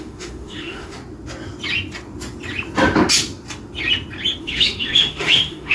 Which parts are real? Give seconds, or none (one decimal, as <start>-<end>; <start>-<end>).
1.0-4.4